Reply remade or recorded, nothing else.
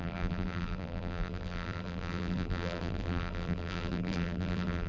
remade